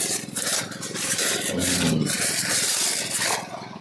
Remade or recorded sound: recorded